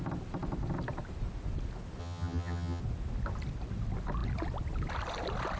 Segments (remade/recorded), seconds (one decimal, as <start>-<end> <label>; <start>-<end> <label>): 0.0-2.0 recorded; 2.0-2.8 remade; 2.8-5.6 recorded